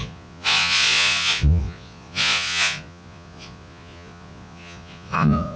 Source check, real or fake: fake